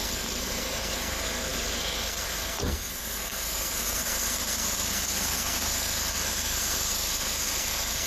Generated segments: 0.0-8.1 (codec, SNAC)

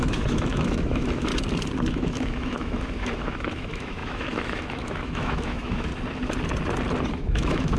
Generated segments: 0.0-1.3 (autoencoder, DAC-VAE); 1.9-5.9; 7.1-7.8

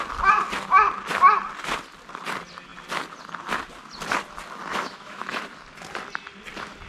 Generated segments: 4.7-5.4 (autoencoder, DAC-VAE)